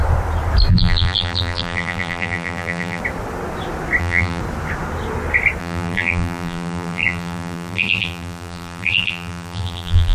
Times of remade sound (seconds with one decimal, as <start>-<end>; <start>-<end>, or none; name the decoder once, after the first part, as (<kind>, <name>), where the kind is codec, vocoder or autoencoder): 0.7-3.0 (vocoder, BigVGAN v2); 4.0-4.4; 5.6-10.1